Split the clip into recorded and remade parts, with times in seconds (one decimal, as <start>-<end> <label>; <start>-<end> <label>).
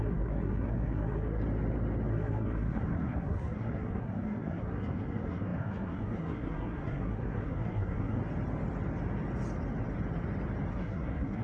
0.0-1.4 remade; 1.4-2.1 recorded; 2.1-8.2 remade; 8.2-10.7 recorded; 10.7-11.4 remade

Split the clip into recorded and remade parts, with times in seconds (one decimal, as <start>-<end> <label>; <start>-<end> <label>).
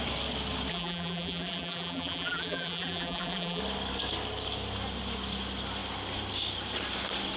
0.0-0.7 recorded; 0.7-3.6 remade; 3.6-7.4 recorded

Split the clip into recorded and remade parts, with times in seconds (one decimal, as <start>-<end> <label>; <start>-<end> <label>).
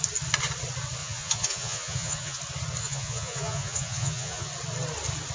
0.0-1.0 recorded; 1.0-2.4 remade; 2.4-2.8 recorded; 2.8-4.5 remade; 4.5-5.3 recorded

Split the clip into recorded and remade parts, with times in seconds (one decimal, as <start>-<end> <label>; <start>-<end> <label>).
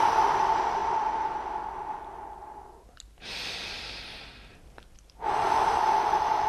0.0-6.5 recorded